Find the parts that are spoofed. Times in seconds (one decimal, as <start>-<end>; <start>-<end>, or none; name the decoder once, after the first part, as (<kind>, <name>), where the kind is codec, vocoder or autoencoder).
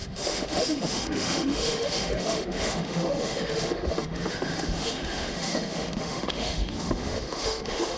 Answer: 0.0-8.0 (autoencoder, DAC-VAE)